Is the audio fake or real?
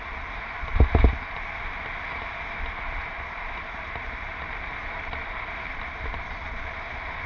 real